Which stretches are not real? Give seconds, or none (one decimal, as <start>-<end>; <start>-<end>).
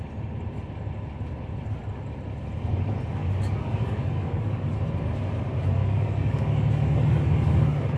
3.2-4.8; 5.8-8.0